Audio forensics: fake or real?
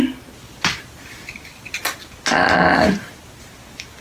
real